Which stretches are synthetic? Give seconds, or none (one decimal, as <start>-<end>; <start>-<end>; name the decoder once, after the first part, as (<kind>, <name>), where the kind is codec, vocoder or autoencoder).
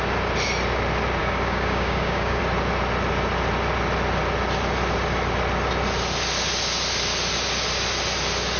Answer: 1.2-2.4 (codec, DAC)